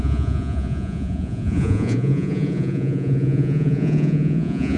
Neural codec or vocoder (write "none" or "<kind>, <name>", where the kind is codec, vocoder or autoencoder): vocoder, Vocos